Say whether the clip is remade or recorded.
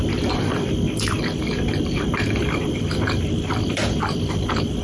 remade